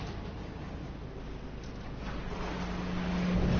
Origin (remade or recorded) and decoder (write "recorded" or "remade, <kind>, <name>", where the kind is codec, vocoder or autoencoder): recorded